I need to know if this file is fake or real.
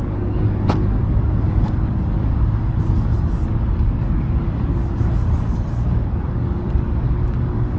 fake